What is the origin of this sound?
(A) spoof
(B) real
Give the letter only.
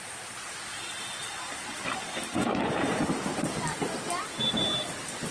B